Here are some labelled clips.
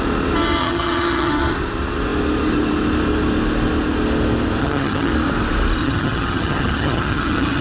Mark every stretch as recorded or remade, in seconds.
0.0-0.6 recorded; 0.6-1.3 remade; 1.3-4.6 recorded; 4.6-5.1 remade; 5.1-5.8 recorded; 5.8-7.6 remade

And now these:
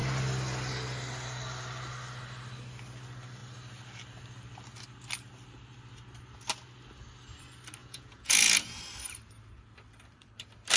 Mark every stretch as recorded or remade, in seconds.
0.0-7.8 recorded; 7.8-8.8 remade; 8.8-10.8 recorded

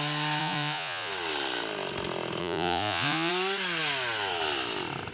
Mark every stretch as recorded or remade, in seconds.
0.0-0.4 recorded; 0.4-1.1 remade; 1.1-2.4 recorded; 2.4-3.3 remade; 3.3-5.1 recorded

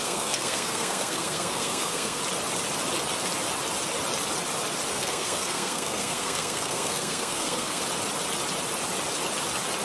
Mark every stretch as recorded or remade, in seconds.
0.0-2.2 remade; 2.2-4.9 recorded; 4.9-7.8 remade; 7.8-9.8 recorded